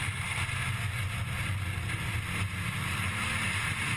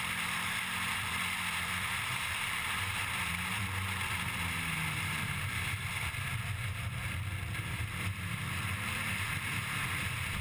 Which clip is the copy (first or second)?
second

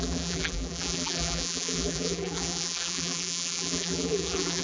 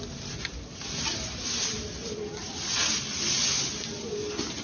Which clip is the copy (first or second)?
first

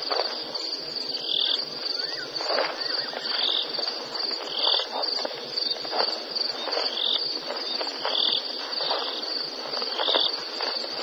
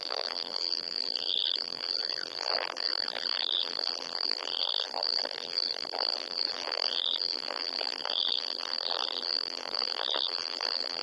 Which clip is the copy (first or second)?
second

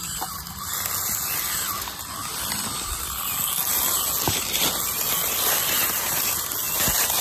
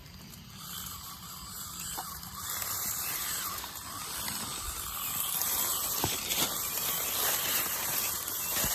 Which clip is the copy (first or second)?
second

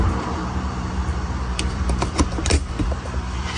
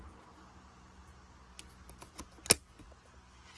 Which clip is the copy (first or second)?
first